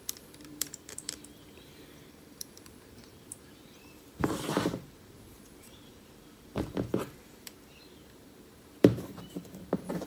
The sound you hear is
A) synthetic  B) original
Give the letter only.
A